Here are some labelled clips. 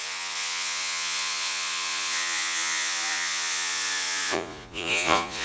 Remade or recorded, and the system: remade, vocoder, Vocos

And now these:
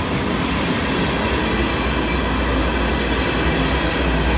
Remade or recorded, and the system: recorded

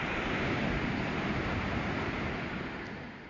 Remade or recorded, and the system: recorded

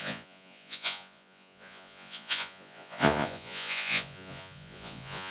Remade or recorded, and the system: remade, vocoder, Vocos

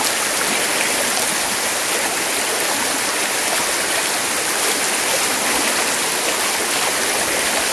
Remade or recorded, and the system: recorded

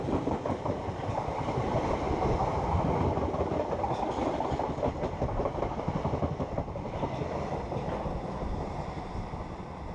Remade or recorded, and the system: recorded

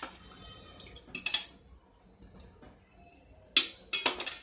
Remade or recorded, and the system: recorded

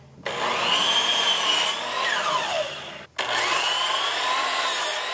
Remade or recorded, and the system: recorded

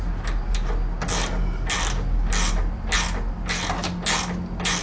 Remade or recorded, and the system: recorded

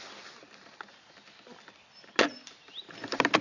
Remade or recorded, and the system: recorded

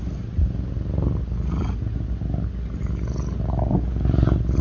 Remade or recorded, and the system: recorded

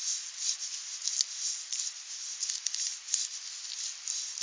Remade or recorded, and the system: recorded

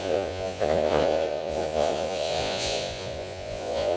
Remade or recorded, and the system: remade, vocoder, Vocos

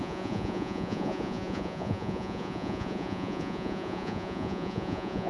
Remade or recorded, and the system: remade, vocoder, Vocos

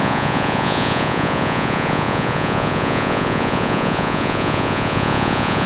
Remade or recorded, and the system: remade, vocoder, Vocos